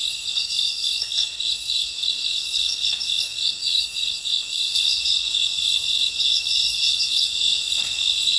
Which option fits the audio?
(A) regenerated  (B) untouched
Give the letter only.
A